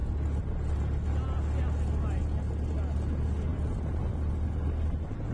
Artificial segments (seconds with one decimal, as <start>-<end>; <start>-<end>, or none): 0.0-0.8; 3.5-4.1